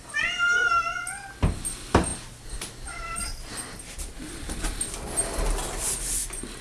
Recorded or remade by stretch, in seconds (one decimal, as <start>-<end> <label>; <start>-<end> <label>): 0.0-6.6 recorded